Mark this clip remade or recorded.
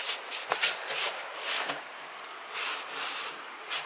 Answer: recorded